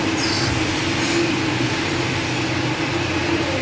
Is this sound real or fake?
real